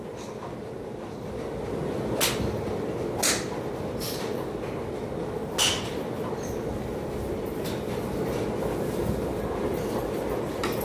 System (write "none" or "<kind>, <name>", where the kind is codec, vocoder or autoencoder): none